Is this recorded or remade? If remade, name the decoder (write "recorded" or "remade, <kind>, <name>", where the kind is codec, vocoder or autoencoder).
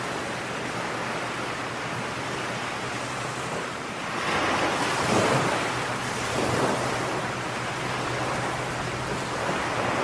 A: recorded